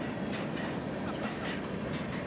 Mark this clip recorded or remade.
recorded